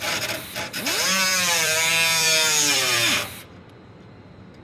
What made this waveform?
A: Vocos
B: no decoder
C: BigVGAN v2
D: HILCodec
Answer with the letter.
C